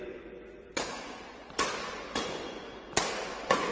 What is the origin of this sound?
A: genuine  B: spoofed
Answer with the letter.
B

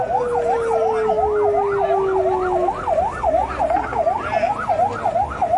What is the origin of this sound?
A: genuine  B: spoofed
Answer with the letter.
A